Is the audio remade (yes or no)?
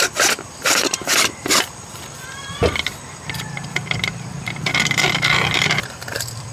yes